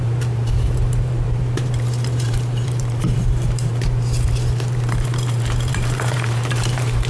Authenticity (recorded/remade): remade